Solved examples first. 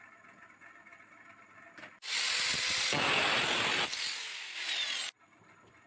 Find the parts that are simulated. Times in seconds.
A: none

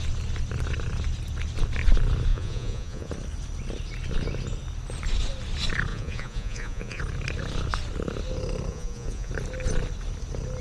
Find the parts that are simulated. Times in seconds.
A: 2.3-3.1 (vocoder, Vocos); 5.9-7.0; 8.7-9.3

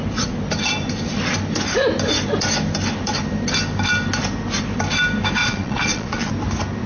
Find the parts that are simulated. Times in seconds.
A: 5.4-6.3 (vocoder, Vocos)

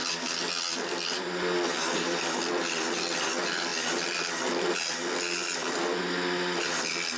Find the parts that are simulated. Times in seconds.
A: none